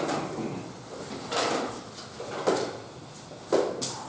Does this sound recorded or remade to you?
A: recorded